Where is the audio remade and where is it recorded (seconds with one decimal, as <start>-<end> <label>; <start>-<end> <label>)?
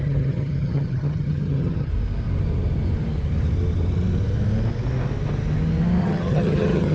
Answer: 0.0-1.9 remade; 1.9-6.0 recorded; 6.0-6.9 remade